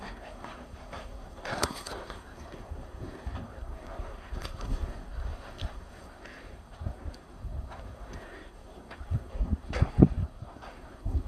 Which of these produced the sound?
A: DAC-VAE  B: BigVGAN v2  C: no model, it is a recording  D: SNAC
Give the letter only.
D